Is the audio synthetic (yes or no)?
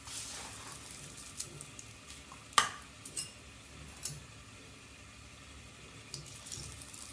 no